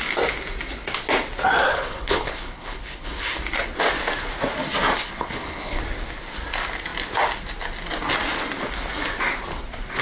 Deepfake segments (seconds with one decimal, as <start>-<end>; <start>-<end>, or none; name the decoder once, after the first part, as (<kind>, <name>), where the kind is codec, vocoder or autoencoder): 1.7-3.4 (codec, HILCodec); 5.0-5.8